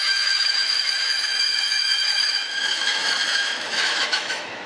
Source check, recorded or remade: remade